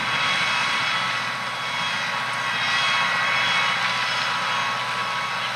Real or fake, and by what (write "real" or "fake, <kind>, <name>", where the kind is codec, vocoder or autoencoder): real